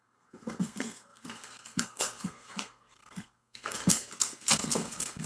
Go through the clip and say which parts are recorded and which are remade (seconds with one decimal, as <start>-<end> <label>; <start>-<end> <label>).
0.0-5.3 remade